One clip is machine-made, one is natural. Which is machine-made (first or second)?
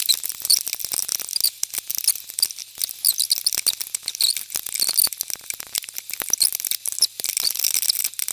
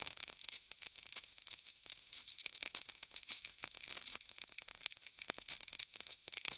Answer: second